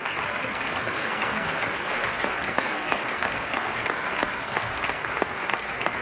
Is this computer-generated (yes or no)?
yes